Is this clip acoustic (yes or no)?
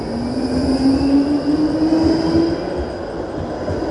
yes